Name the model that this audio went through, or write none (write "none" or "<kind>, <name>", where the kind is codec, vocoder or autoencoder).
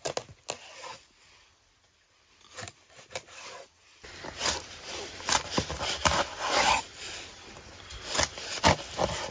none